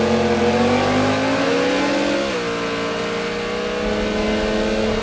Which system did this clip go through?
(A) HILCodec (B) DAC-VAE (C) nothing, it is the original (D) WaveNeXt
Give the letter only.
C